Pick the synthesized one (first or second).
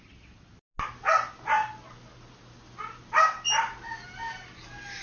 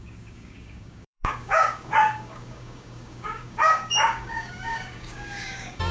second